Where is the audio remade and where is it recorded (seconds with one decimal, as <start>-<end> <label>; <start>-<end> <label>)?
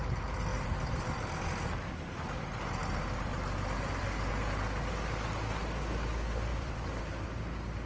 0.0-0.5 recorded; 0.5-2.4 remade; 2.4-2.8 recorded; 2.8-4.3 remade; 4.3-6.5 recorded; 6.5-7.0 remade; 7.0-7.9 recorded